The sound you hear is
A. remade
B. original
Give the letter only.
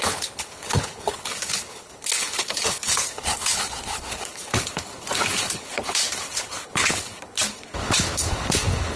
A